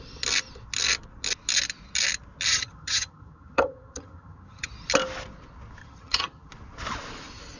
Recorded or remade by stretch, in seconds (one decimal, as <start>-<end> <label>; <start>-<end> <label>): 0.0-2.5 recorded; 2.5-4.7 remade; 4.7-5.8 recorded; 5.8-6.5 remade; 6.5-7.6 recorded

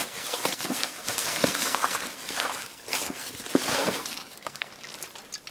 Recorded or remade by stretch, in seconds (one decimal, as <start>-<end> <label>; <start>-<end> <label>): 0.0-3.3 remade; 3.3-3.7 recorded; 3.7-4.7 remade; 4.7-5.5 recorded

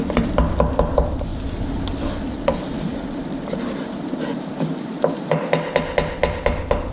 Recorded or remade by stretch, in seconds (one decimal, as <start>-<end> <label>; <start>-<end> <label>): 0.0-1.3 recorded; 1.3-5.4 remade; 5.4-6.9 recorded

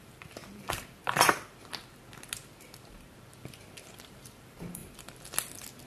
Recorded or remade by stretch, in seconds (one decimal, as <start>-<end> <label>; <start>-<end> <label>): 0.0-1.0 remade; 1.0-3.8 recorded; 3.8-4.8 remade; 4.8-5.9 recorded